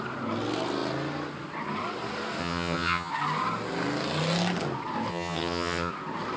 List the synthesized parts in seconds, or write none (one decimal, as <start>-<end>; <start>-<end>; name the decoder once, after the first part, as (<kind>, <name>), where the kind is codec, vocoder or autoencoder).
2.4-3.1 (vocoder, HiFi-GAN); 5.1-5.9